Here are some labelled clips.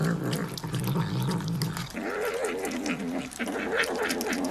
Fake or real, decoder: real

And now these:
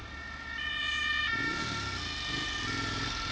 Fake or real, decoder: real